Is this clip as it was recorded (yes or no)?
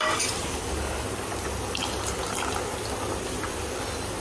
yes